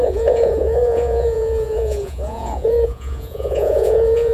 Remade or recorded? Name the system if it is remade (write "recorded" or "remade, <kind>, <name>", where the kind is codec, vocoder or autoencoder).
remade, vocoder, Vocos